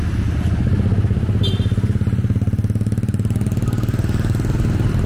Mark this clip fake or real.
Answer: real